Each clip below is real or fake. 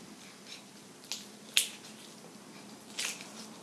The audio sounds real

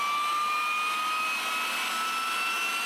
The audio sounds real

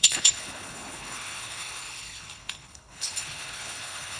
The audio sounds fake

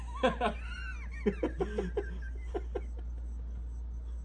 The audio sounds real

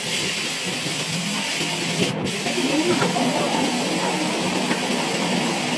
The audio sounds real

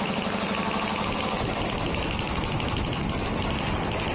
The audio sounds real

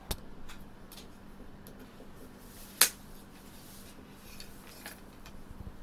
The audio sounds real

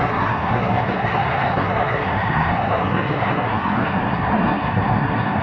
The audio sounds fake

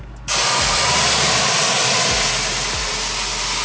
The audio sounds real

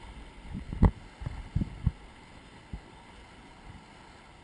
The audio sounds real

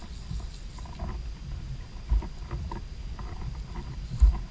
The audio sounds real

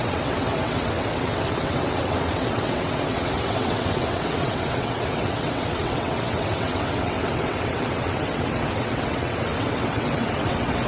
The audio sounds fake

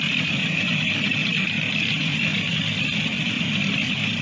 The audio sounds real